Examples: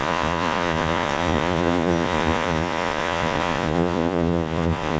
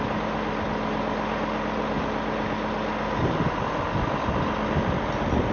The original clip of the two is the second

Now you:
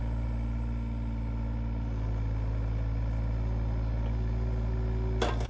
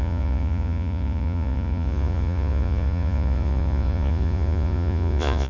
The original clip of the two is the first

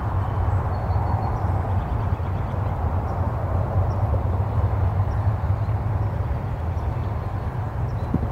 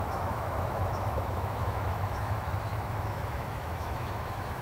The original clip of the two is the first